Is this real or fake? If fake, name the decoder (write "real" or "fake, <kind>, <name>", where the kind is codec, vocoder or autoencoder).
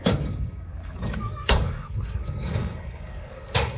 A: fake, codec, DAC